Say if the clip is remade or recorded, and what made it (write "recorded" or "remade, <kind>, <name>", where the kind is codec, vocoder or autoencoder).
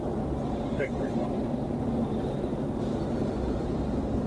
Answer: recorded